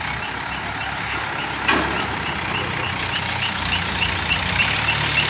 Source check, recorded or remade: recorded